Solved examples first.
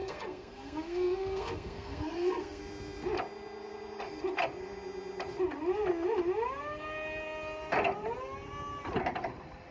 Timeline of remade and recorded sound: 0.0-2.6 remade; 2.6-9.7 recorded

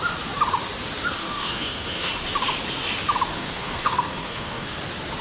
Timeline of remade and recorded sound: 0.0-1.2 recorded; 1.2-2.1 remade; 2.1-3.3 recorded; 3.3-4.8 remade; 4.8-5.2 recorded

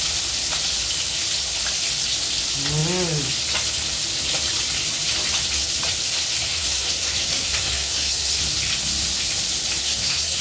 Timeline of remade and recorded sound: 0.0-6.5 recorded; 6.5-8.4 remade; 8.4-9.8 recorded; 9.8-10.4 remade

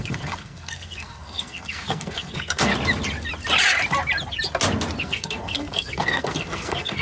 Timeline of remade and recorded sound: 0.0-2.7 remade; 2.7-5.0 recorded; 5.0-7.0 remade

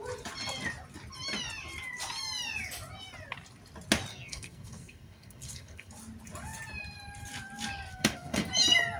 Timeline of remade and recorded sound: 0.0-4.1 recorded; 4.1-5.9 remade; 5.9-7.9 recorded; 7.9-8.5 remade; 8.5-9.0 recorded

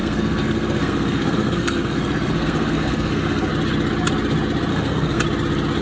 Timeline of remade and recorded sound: 0.0-3.5 remade; 3.5-4.7 recorded; 4.7-5.2 remade; 5.2-5.8 recorded

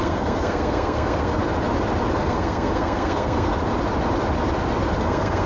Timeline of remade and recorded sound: 0.0-1.4 remade; 1.4-2.2 recorded; 2.2-3.5 remade; 3.5-5.0 recorded; 5.0-5.5 remade